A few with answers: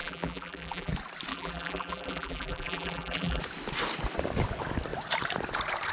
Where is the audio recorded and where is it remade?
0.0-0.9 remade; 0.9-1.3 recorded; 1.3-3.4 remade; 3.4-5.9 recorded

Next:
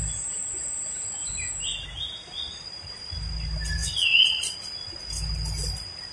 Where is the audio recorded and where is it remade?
0.0-6.1 recorded

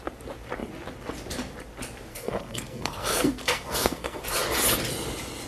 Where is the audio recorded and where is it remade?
0.0-2.1 recorded; 2.1-4.2 remade; 4.2-5.5 recorded

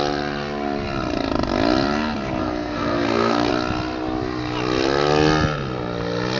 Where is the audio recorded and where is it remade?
0.0-2.4 recorded; 2.4-3.5 remade; 3.5-6.4 recorded

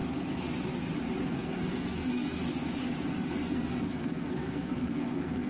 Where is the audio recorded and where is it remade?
0.0-1.2 recorded; 1.2-2.5 remade; 2.5-3.1 recorded; 3.1-5.5 remade